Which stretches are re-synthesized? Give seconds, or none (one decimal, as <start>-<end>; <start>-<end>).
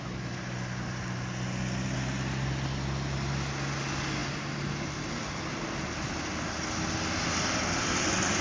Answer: none